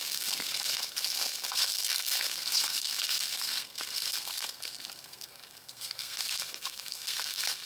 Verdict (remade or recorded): remade